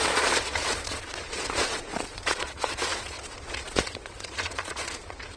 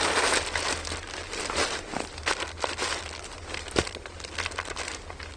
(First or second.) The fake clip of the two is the first